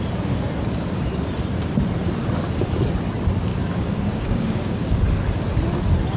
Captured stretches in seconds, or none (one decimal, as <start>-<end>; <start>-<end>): 0.0-3.5; 5.0-6.2